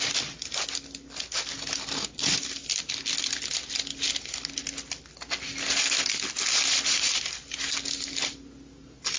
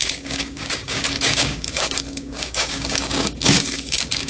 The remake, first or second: second